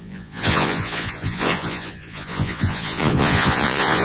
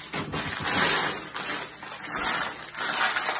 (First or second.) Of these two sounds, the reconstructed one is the first